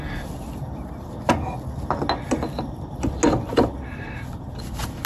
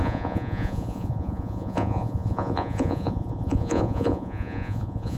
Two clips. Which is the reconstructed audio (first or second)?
second